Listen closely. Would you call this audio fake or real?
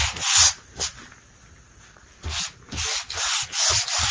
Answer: real